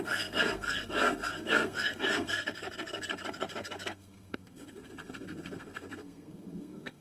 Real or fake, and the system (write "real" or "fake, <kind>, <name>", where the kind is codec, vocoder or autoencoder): fake, codec, SNAC